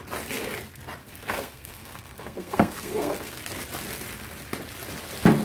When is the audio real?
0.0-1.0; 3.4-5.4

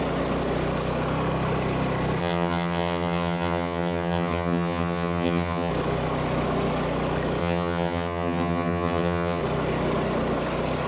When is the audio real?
0.0-2.2; 5.7-7.4; 9.4-10.9

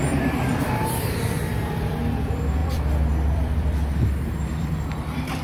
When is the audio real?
none

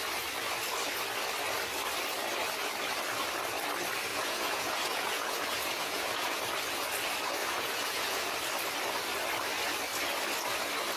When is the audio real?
0.0-4.1; 6.4-7.4; 8.3-11.0

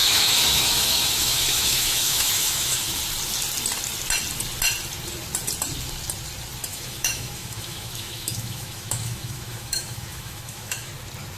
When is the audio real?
3.0-6.7; 10.9-11.4

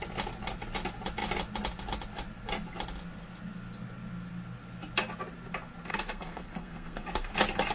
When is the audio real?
0.0-5.9; 7.3-7.7

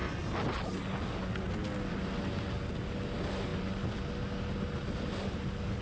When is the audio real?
0.0-5.8